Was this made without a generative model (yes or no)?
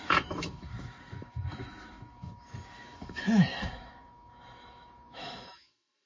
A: no